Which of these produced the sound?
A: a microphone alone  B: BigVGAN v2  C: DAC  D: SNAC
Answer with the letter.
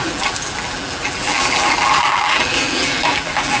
B